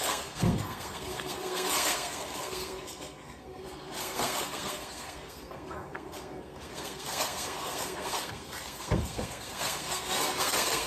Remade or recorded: remade